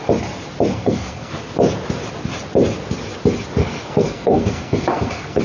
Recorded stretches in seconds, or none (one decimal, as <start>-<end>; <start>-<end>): 0.0-0.7; 1.3-3.6